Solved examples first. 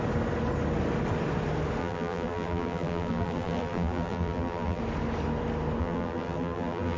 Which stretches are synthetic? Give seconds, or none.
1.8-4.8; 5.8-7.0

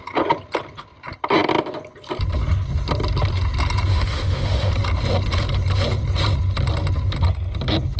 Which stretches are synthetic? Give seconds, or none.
3.9-4.7

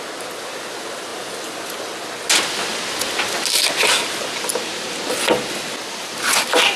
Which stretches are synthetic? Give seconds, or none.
none